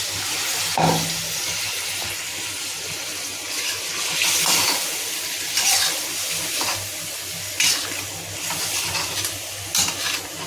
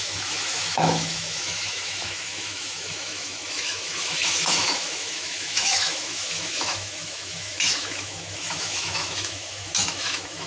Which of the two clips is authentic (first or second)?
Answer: first